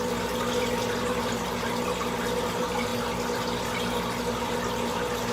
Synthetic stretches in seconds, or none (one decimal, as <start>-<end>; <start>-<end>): none

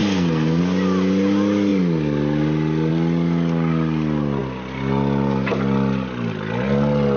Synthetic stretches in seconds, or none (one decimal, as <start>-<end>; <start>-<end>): 0.0-0.6

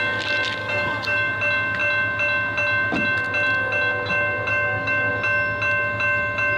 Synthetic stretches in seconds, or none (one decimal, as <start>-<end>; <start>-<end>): 0.6-1.3; 4.5-5.1

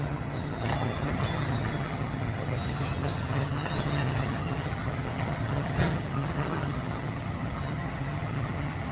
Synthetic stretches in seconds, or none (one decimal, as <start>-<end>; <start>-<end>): 0.0-8.9